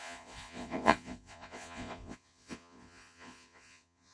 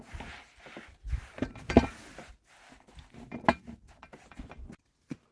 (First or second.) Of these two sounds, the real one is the second